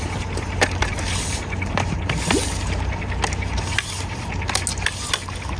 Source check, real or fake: real